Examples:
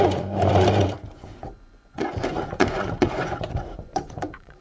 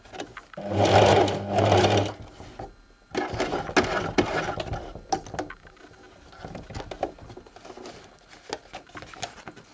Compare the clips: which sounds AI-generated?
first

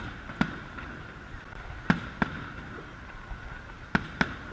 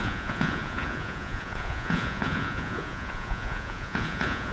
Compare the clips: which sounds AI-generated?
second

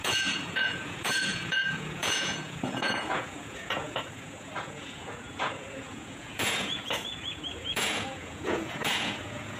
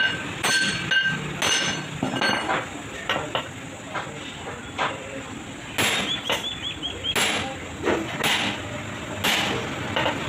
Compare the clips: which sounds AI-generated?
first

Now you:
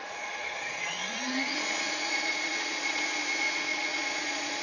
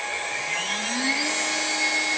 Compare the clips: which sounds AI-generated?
first